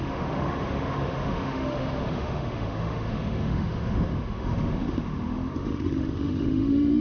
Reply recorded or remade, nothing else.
remade